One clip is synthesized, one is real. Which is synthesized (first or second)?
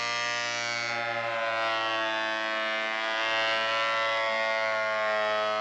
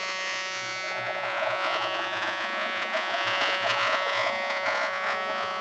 second